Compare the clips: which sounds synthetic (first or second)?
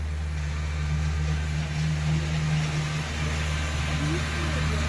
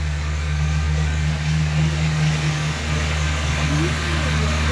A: second